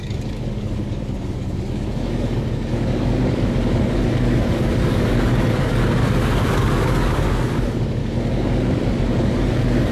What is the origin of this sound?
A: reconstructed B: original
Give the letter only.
A